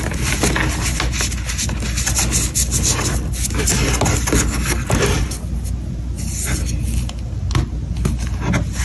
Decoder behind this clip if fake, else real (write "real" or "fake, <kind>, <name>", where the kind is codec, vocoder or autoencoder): real